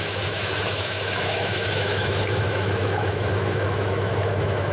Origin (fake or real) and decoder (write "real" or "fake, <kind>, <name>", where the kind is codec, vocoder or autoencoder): fake, autoencoder, DAC-VAE